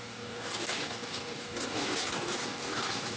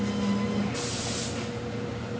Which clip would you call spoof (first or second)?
first